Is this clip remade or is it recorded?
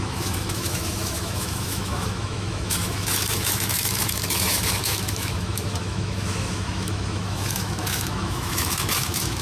remade